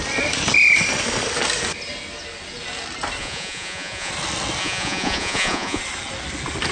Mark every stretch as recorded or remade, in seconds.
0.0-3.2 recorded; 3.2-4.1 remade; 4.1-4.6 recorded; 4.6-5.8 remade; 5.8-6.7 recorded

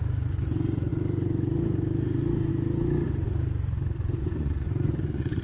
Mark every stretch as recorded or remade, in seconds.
0.0-4.2 recorded; 4.2-5.4 remade

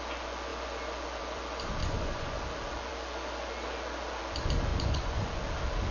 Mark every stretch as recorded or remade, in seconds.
0.0-1.8 recorded; 1.8-2.4 remade; 2.4-4.7 recorded; 4.7-5.4 remade; 5.4-5.9 recorded